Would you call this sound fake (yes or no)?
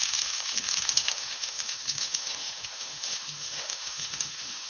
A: yes